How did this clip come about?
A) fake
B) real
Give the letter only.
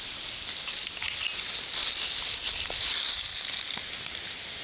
B